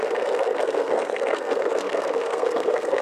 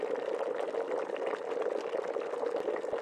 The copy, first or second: first